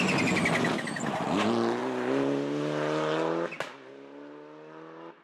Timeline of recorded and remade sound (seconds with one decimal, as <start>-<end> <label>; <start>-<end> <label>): 0.0-5.2 recorded